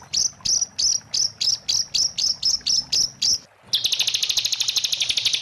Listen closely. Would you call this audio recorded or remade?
recorded